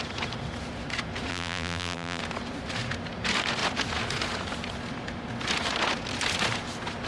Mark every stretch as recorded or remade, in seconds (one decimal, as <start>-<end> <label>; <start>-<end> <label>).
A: 0.0-1.3 recorded; 1.3-2.2 remade; 2.2-7.1 recorded